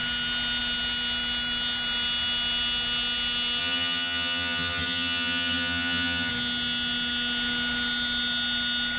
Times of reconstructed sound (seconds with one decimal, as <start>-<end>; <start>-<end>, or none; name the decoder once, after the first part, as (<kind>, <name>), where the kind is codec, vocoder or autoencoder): 3.6-6.3 (vocoder, HiFi-GAN)